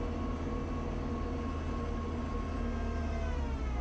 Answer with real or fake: real